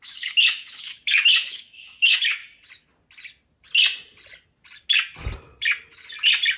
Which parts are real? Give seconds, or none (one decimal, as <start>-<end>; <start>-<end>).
2.4-6.6